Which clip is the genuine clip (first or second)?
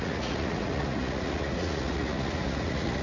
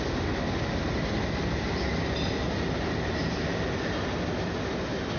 second